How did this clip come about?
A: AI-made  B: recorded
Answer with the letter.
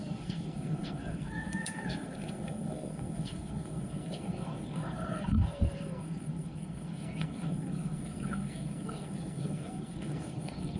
A